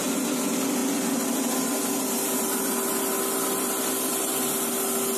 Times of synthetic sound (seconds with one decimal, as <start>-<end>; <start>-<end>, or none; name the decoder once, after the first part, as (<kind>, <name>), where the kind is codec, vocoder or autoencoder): none

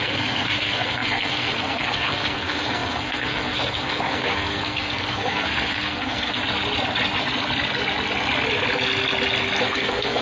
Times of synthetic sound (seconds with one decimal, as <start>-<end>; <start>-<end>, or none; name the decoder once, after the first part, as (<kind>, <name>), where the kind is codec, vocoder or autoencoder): 0.0-6.4 (codec, SNAC); 9.6-10.2